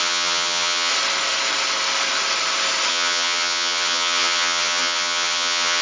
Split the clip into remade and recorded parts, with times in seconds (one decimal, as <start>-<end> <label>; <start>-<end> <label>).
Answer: 0.0-0.9 remade; 0.9-2.9 recorded; 2.9-5.8 remade